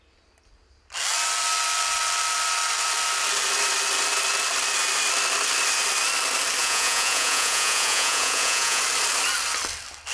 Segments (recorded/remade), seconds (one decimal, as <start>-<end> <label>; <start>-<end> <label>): 0.0-6.6 recorded; 6.6-8.8 remade; 8.8-10.1 recorded